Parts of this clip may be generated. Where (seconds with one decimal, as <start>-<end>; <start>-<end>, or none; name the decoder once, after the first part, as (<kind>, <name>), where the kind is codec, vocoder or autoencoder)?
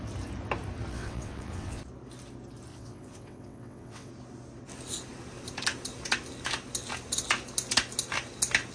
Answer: 0.9-1.8 (vocoder, WaveNeXt); 2.7-4.1